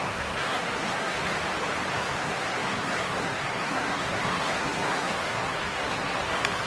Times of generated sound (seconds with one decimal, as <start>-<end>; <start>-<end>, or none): 0.0-1.2; 1.9-6.7